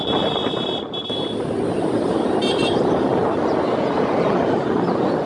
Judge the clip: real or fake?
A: real